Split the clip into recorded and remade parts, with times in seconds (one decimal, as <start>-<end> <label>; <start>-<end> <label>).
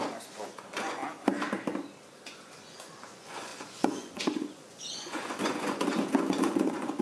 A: 0.0-1.0 remade; 1.0-2.1 recorded; 2.1-7.0 remade